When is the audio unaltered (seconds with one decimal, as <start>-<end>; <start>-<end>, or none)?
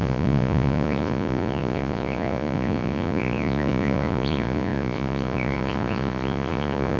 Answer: none